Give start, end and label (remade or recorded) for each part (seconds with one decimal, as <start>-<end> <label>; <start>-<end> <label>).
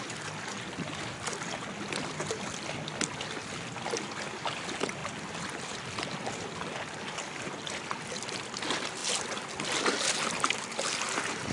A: 0.0-11.5 recorded